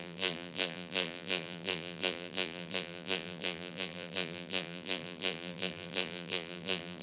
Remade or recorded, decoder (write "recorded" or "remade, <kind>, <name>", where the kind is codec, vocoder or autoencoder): remade, vocoder, BigVGAN v2